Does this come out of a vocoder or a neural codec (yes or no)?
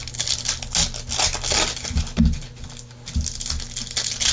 no